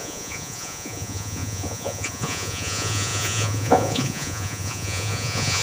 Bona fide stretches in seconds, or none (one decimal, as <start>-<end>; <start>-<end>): none